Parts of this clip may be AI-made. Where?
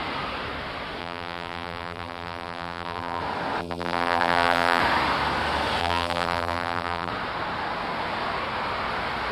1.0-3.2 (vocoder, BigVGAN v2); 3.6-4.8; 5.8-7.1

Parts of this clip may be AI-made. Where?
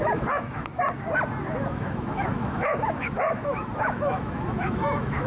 0.0-0.7 (autoencoder, DAC-VAE); 1.7-5.3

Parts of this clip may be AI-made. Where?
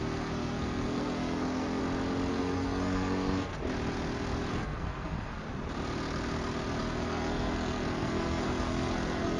0.0-1.8 (codec, SNAC); 2.3-3.5; 4.5-5.4; 6.8-9.4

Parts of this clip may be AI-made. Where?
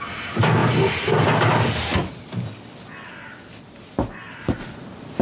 none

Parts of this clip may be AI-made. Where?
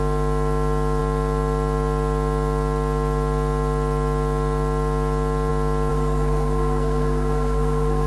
5.9-8.1 (codec, SNAC)